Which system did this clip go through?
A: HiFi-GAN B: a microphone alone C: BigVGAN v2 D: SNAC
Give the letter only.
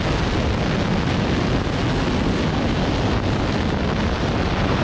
B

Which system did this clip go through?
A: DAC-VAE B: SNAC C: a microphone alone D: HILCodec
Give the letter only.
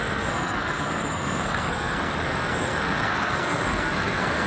B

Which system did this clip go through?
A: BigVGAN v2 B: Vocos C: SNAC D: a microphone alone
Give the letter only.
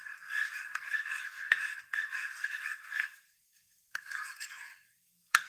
C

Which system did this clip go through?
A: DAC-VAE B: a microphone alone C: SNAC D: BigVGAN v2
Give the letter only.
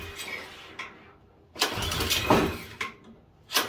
B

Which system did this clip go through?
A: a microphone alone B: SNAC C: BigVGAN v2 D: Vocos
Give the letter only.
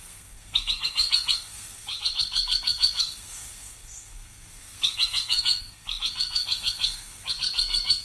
B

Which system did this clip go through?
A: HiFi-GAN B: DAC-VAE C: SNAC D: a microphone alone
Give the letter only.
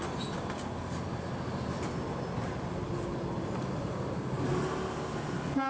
D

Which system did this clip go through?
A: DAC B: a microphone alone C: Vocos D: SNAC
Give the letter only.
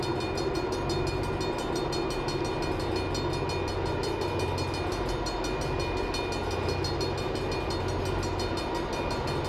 B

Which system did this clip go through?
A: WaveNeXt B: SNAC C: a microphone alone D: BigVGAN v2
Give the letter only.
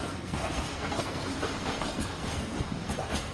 B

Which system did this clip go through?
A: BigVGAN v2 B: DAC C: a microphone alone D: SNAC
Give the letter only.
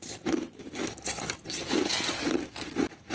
C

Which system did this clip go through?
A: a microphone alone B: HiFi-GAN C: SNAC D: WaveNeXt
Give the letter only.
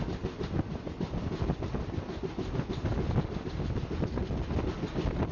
A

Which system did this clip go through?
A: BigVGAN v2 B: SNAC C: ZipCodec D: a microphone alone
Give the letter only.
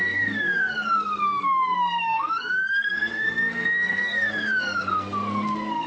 B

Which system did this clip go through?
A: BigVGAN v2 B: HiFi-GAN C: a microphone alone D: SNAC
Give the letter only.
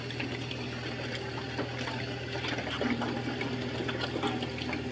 C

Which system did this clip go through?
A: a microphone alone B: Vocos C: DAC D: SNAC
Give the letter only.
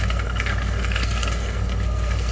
D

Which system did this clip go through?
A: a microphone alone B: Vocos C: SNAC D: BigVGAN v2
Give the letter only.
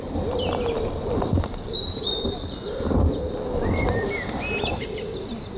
A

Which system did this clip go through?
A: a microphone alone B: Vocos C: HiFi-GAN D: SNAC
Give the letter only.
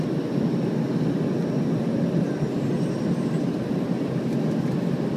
A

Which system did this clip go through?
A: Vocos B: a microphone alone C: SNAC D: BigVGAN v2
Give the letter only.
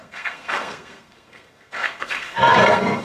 C